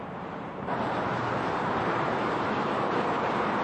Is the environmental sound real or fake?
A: fake